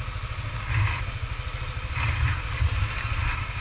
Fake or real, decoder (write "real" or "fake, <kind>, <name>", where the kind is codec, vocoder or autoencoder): real